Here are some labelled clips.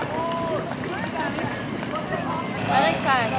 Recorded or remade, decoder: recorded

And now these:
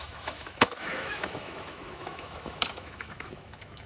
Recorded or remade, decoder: remade, autoencoder, DAC-VAE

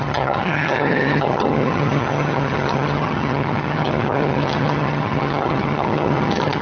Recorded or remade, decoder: remade, vocoder, HiFi-GAN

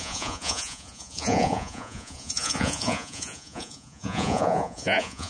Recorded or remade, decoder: remade, vocoder, Vocos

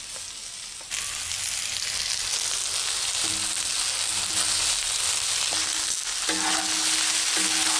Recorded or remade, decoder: recorded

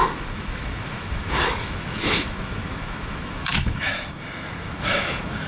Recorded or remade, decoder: remade, autoencoder, DAC-VAE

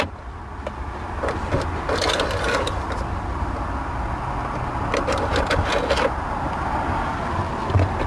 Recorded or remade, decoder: recorded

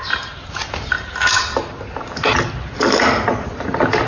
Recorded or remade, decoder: recorded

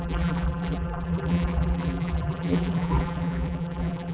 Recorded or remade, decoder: remade, vocoder, BigVGAN v2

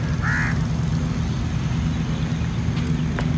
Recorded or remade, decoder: recorded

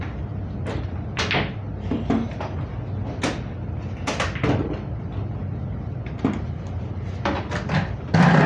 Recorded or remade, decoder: recorded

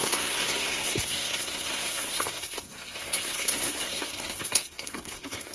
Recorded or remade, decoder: remade, codec, SNAC